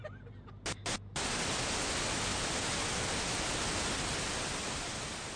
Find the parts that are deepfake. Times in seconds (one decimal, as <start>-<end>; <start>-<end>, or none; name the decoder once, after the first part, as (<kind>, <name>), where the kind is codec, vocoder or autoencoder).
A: none

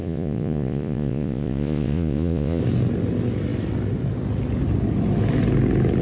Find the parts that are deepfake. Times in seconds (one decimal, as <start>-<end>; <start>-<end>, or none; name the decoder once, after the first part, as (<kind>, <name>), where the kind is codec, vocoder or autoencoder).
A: 0.0-2.6 (vocoder, Vocos)

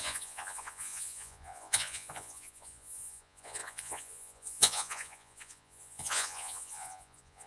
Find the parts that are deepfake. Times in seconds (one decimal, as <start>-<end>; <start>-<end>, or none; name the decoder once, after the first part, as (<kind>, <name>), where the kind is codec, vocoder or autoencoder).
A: 0.0-7.5 (vocoder, Vocos)